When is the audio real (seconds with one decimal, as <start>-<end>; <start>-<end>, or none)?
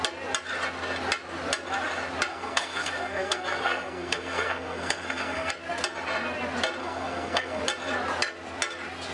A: 0.0-2.3; 5.5-6.8; 7.6-9.1